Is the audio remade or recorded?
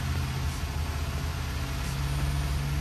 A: recorded